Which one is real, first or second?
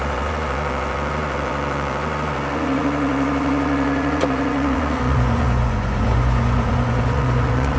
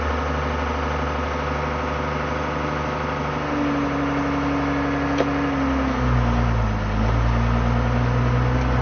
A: second